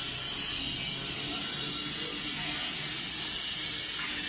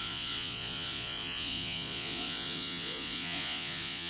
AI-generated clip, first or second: second